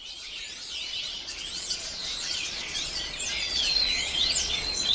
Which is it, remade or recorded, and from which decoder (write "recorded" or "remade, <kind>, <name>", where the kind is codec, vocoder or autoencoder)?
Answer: remade, vocoder, Vocos